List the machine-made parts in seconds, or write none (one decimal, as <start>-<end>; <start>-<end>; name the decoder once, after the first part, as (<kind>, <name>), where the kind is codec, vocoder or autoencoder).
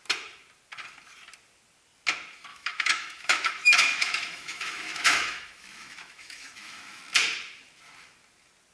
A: 2.5-7.0 (autoencoder, DAC-VAE)